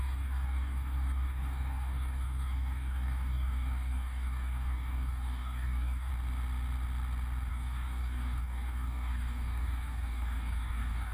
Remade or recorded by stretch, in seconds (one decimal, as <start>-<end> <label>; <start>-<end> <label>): 0.0-6.1 remade; 6.1-7.5 recorded; 7.5-11.1 remade